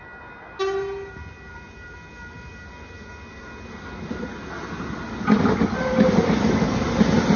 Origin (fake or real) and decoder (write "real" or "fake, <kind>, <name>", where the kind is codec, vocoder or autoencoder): real